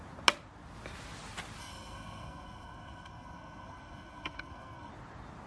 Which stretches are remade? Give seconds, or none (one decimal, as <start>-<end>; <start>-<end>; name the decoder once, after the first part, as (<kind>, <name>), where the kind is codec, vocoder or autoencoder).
1.6-4.9 (codec, SNAC)